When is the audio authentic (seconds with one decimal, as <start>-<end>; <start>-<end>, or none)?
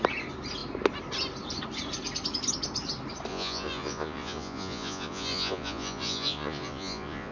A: 0.0-3.3